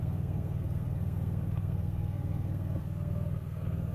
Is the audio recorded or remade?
remade